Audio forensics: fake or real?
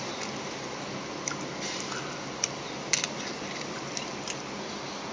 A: real